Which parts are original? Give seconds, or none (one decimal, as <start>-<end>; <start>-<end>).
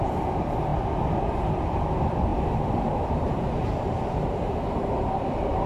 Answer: 2.3-5.1